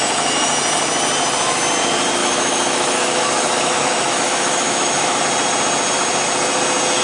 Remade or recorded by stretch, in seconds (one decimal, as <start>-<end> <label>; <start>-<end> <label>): 0.0-2.2 recorded; 2.2-5.2 remade; 5.2-7.0 recorded